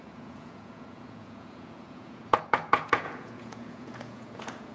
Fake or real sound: fake